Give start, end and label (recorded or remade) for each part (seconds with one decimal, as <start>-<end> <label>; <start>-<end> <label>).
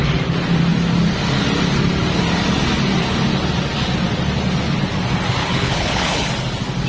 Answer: 0.0-5.4 recorded; 5.4-6.3 remade; 6.3-6.9 recorded